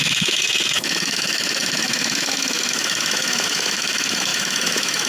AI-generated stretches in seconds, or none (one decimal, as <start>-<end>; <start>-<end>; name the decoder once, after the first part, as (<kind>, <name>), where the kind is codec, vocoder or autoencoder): 0.0-5.1 (autoencoder, DAC-VAE)